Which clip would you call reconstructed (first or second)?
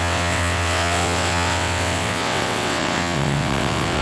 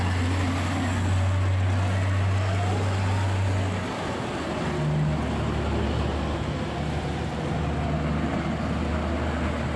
first